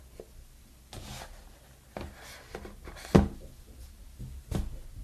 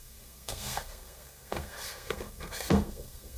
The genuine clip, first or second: first